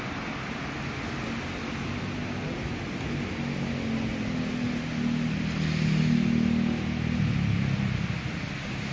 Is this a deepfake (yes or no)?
no